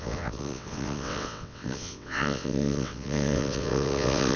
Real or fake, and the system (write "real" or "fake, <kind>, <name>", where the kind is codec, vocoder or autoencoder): fake, vocoder, WaveNeXt